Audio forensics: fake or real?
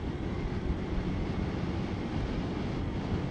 real